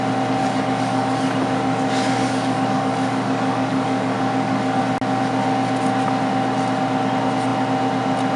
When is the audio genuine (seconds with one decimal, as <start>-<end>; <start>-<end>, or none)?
0.0-0.4; 4.8-8.4

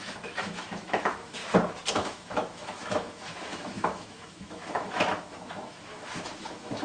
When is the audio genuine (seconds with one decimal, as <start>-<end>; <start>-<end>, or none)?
1.4-1.9

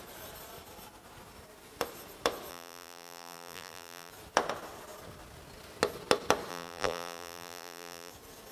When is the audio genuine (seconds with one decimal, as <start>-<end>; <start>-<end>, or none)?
0.0-2.5; 4.1-6.5; 8.1-8.5

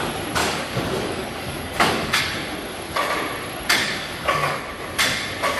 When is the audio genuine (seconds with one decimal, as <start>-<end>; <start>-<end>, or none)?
0.0-0.4; 2.2-3.8; 4.7-5.6

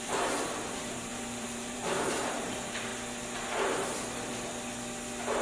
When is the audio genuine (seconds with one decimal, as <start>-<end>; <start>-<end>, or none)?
2.9-5.4

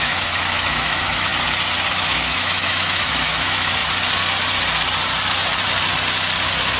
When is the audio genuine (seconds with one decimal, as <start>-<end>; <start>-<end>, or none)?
1.3-1.9; 3.8-6.8

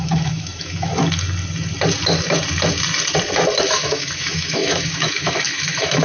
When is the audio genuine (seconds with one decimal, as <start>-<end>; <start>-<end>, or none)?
0.9-3.6